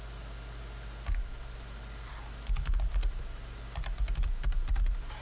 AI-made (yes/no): no